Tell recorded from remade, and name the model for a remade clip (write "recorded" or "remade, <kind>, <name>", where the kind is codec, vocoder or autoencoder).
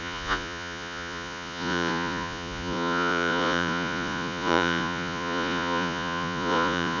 remade, vocoder, Vocos